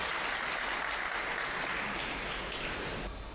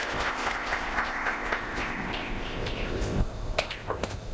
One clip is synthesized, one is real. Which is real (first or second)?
first